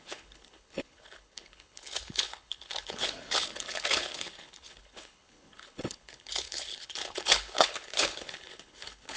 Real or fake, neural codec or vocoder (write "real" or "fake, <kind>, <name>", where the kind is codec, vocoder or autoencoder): fake, codec, HILCodec